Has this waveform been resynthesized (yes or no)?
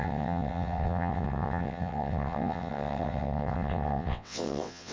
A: yes